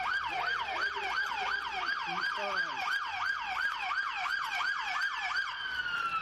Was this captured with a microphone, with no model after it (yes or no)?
yes